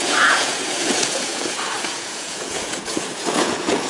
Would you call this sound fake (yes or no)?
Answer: yes